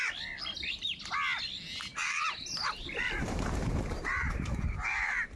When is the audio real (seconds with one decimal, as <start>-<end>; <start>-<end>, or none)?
0.0-1.9